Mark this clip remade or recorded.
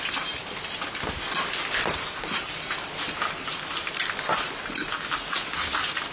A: recorded